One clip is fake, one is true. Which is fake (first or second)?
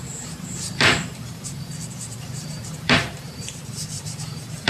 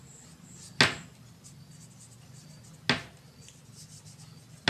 first